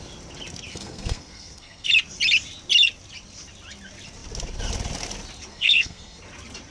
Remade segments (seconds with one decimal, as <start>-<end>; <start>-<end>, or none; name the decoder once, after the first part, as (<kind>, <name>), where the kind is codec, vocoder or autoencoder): 0.7-1.9 (codec, SNAC); 5.5-6.2